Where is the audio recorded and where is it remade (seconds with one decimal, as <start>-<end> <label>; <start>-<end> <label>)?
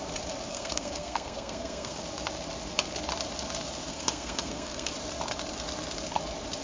0.0-0.5 recorded; 0.5-2.0 remade; 2.0-3.9 recorded; 3.9-4.9 remade; 4.9-6.6 recorded